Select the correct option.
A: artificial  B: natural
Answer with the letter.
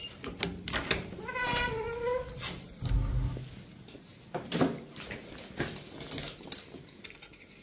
B